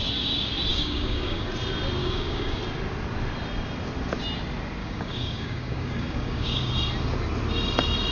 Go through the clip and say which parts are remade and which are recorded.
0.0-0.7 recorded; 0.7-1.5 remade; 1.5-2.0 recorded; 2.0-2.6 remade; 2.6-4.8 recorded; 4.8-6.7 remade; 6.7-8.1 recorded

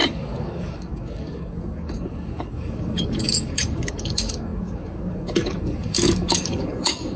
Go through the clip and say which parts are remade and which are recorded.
0.0-7.2 remade

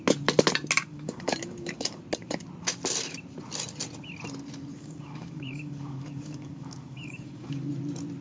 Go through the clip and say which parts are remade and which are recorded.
0.0-0.9 recorded; 0.9-2.0 remade; 2.0-4.7 recorded; 4.7-7.7 remade; 7.7-8.2 recorded

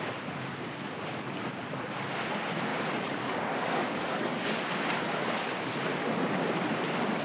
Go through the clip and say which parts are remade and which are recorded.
0.0-2.7 recorded; 2.7-4.6 remade; 4.6-7.2 recorded